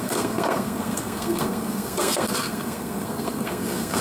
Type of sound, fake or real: fake